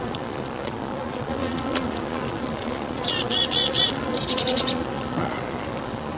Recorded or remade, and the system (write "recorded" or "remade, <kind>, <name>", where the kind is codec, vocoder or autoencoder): remade, vocoder, Vocos